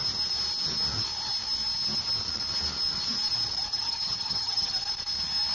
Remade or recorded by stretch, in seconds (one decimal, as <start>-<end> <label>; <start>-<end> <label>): 0.0-3.7 recorded; 3.7-4.7 remade; 4.7-5.5 recorded